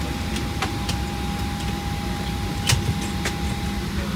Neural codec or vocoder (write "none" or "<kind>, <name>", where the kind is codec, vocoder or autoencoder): none